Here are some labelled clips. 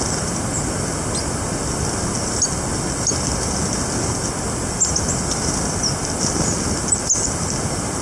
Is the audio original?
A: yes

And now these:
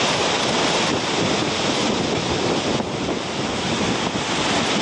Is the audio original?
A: no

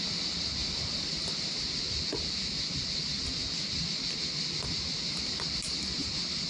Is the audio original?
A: yes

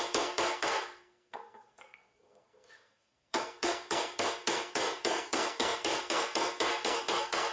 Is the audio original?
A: no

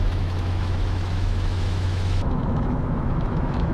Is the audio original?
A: no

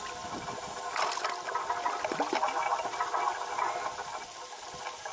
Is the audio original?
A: yes